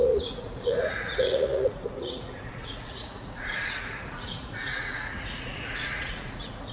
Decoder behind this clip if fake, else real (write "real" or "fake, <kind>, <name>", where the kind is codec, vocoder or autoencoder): fake, vocoder, Vocos